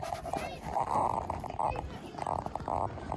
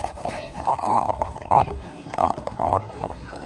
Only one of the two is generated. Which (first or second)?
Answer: second